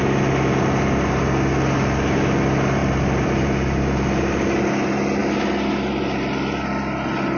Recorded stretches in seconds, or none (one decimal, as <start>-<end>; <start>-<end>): 0.0-2.8; 3.8-7.4